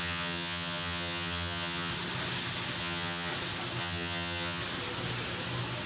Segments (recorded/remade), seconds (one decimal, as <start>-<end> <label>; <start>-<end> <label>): 0.0-1.9 remade; 1.9-2.8 recorded; 2.8-3.3 remade; 3.3-3.8 recorded; 3.8-4.6 remade; 4.6-5.9 recorded